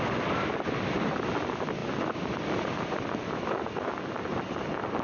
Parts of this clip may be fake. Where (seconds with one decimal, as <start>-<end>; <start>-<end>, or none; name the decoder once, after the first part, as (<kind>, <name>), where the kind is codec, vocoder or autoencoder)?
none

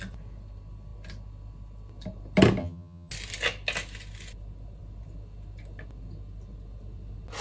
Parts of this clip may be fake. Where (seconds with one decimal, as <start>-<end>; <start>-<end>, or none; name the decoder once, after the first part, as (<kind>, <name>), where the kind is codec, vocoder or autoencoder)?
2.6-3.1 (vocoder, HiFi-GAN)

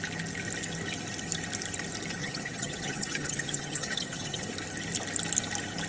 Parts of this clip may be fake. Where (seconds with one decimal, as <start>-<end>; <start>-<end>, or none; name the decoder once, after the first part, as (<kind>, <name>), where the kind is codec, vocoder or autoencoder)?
2.2-4.5 (vocoder, HiFi-GAN)

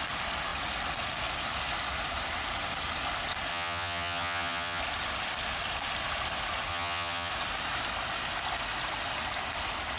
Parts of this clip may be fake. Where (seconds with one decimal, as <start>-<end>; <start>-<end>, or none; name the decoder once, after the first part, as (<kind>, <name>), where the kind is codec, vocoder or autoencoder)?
3.5-4.8 (vocoder, HiFi-GAN); 6.7-7.3

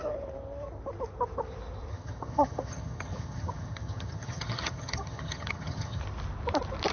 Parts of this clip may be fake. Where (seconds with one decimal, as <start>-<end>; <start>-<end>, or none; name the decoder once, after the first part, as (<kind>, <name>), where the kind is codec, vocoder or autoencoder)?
1.9-6.0 (vocoder, HiFi-GAN)

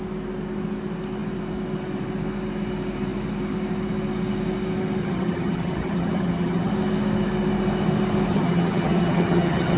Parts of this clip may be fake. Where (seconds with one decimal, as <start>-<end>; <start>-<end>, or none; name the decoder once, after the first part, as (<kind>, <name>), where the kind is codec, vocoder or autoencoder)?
5.0-6.7 (vocoder, HiFi-GAN); 8.3-9.8